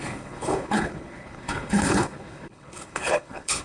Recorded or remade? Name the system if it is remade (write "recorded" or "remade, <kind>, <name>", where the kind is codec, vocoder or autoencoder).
remade, codec, HILCodec